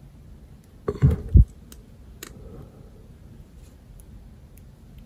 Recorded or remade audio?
recorded